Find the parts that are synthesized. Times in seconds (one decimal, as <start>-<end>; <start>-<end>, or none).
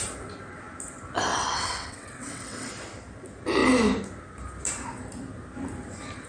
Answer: 1.3-2.7